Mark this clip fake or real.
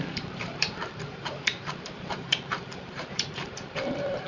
fake